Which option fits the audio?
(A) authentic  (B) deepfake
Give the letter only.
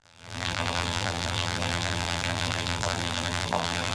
B